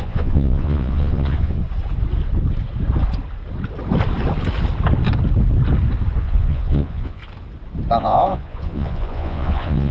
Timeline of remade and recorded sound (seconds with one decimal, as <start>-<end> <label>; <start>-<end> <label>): 0.0-1.6 remade; 1.6-6.2 recorded; 6.2-7.2 remade; 7.2-8.0 recorded; 8.0-9.9 remade

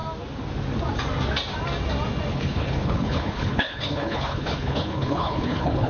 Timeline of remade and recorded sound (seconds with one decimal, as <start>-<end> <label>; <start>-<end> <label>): 0.0-2.3 recorded; 2.3-5.9 remade